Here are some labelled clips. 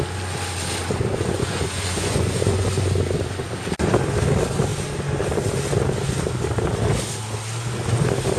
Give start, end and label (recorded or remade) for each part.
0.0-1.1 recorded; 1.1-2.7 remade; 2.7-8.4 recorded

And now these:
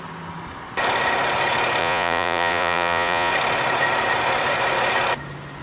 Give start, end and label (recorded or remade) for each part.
0.0-1.8 recorded; 1.8-3.3 remade; 3.3-5.6 recorded